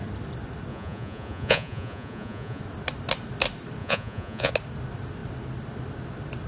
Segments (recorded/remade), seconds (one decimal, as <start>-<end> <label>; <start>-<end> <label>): 0.0-0.7 recorded; 0.7-2.6 remade; 2.6-3.8 recorded; 3.8-4.5 remade; 4.5-6.5 recorded